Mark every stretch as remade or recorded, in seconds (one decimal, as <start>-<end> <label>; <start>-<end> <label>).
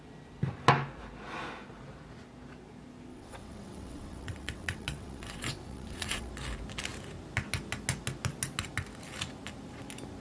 0.0-3.1 recorded; 3.1-6.3 remade; 6.3-10.2 recorded